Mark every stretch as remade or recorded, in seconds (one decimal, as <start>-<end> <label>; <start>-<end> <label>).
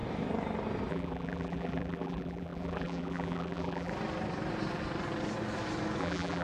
0.0-0.9 recorded; 0.9-3.9 remade; 3.9-6.0 recorded; 6.0-6.4 remade